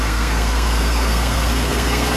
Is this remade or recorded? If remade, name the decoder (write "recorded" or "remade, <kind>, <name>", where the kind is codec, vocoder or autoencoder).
remade, codec, SNAC